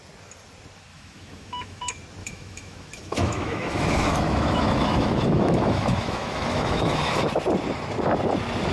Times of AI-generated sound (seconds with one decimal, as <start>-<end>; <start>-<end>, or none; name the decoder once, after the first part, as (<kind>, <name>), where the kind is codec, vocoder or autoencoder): 0.9-1.8 (autoencoder, DAC-VAE); 2.2-7.2